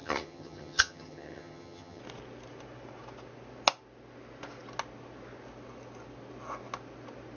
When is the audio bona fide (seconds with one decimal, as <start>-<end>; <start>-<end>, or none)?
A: 2.0-7.4